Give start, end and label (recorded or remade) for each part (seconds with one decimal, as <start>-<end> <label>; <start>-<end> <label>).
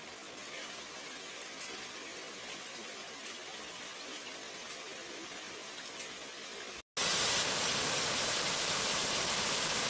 0.0-9.9 recorded